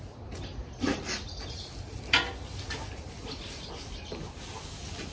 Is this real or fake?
real